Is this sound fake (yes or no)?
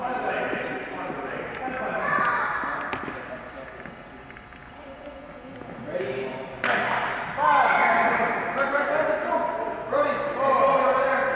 no